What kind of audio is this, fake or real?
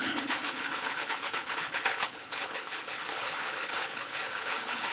fake